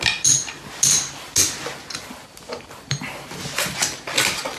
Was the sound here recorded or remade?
recorded